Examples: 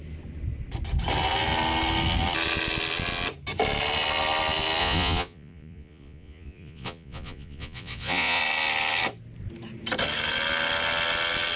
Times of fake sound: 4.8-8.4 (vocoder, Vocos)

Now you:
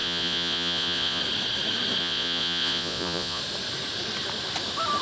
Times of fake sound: 0.0-1.2 (vocoder, Vocos); 2.0-3.4

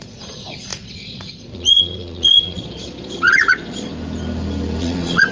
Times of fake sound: 0.0-3.9 (vocoder, Vocos); 4.8-5.3

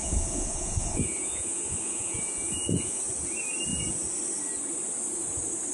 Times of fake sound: 0.0-3.0 (vocoder, Vocos)

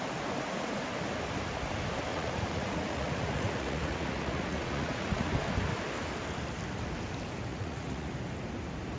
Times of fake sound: 2.1-5.3 (vocoder, Vocos); 7.5-8.1